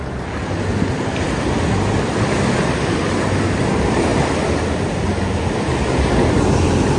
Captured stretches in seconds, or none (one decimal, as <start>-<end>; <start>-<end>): 0.0-7.0